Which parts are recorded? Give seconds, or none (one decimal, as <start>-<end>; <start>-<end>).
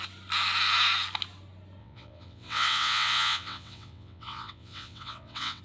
0.0-1.8